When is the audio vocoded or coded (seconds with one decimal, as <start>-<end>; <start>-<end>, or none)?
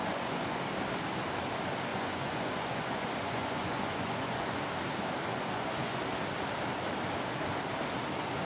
0.0-0.6; 1.9-4.6; 5.3-6.0